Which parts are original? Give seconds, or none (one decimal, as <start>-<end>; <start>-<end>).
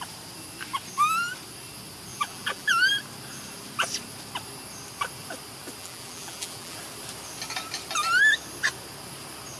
0.0-2.1; 2.9-5.8; 6.8-9.6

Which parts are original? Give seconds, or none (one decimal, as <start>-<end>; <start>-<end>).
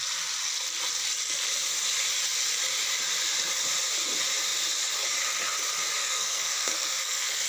0.0-6.0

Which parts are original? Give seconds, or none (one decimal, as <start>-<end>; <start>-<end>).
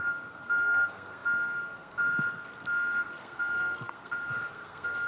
none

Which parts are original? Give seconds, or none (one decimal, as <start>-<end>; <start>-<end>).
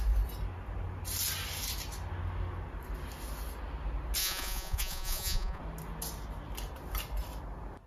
0.0-4.2; 5.6-7.9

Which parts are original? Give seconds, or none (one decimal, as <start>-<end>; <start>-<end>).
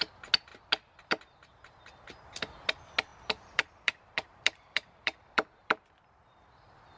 0.0-3.1; 5.9-7.0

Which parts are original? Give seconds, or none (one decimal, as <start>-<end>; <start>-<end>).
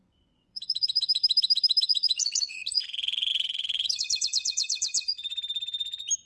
1.2-1.8; 5.3-6.3